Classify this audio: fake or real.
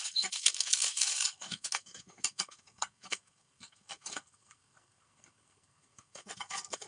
fake